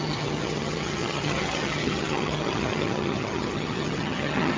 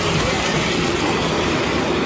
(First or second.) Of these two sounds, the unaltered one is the second